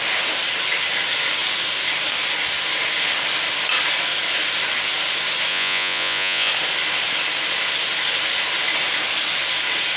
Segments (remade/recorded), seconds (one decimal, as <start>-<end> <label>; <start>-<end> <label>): 0.0-5.5 recorded; 5.5-6.5 remade; 6.5-10.0 recorded